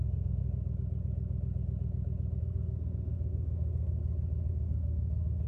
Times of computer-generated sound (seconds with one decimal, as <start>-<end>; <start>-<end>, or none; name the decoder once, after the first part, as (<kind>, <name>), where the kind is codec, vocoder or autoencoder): 0.0-0.4 (codec, SNAC); 2.4-4.0; 4.5-5.5

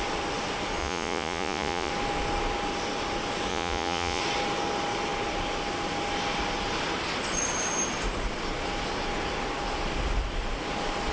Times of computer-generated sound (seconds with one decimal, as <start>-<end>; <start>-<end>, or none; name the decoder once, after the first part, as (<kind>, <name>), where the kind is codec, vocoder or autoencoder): 0.8-1.9 (vocoder, Vocos); 3.5-4.2

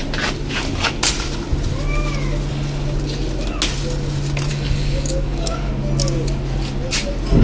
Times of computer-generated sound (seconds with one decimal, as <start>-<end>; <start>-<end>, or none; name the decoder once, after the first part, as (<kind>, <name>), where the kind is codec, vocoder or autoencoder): 4.5-5.7 (codec, DAC)